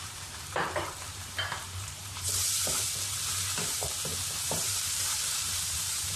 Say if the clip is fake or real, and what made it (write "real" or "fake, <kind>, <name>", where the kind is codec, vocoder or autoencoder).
fake, vocoder, BigVGAN v2